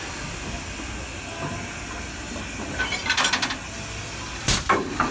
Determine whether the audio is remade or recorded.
recorded